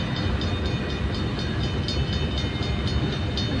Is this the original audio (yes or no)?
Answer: yes